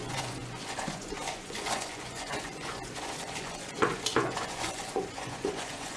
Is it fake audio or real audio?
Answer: fake